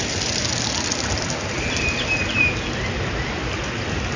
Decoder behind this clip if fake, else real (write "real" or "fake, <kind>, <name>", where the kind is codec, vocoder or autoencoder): real